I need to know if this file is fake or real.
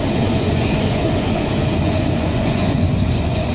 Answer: fake